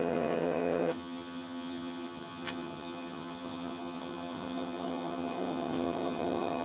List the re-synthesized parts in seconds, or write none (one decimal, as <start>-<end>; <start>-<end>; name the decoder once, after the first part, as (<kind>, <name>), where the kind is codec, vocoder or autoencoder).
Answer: 0.0-6.6 (vocoder, HiFi-GAN)